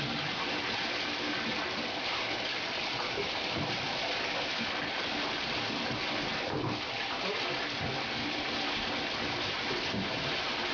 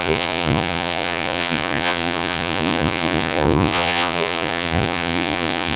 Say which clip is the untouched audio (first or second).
first